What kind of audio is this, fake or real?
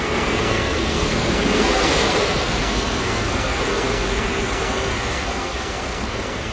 fake